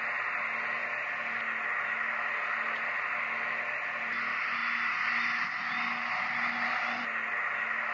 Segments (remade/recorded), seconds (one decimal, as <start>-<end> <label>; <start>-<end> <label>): 0.0-7.9 recorded